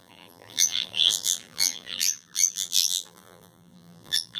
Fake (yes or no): yes